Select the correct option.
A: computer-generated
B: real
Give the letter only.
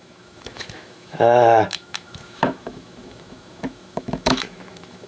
A